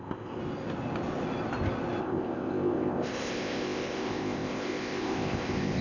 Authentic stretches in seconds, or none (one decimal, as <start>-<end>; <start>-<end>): 0.4-2.0